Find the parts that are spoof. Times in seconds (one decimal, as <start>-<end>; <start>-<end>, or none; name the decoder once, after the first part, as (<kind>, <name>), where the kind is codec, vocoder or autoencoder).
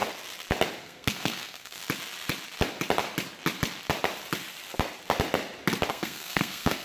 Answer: 0.8-1.8 (codec, SNAC); 5.9-6.8